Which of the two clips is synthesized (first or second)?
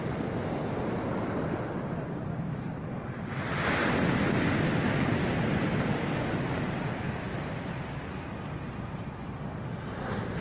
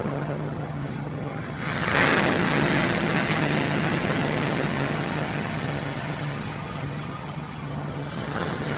second